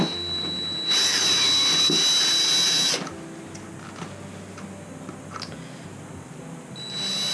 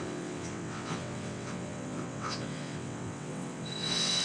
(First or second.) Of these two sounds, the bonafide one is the first